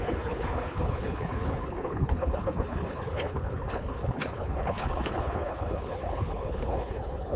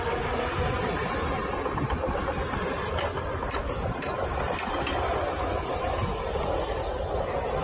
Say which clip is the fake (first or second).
first